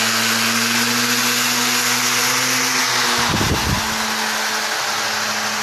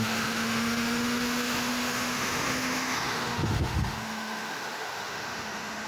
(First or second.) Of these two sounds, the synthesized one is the second